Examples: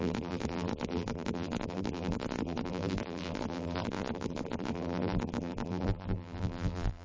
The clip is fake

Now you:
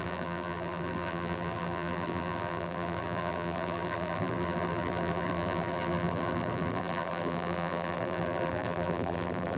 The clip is fake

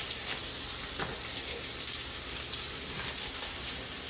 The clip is real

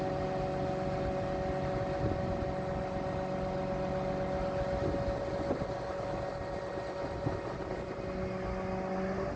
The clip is real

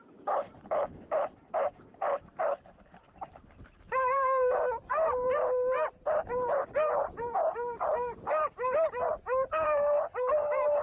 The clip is fake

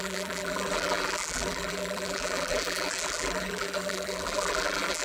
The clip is fake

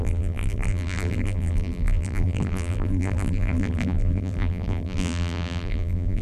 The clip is fake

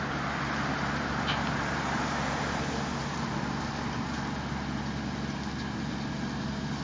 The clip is real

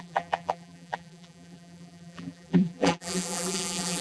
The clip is fake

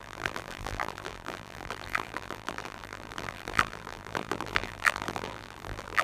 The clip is fake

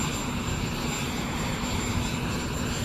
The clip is real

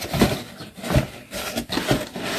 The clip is real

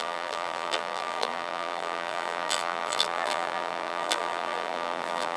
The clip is fake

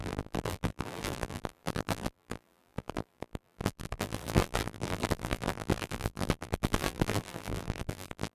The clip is fake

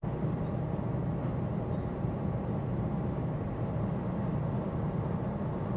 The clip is fake